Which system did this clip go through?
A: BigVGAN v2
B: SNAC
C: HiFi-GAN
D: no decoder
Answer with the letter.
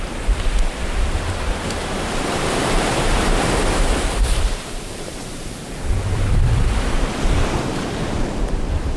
A